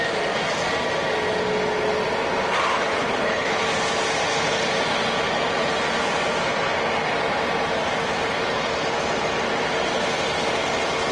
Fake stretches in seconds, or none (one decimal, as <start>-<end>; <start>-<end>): 3.0-3.6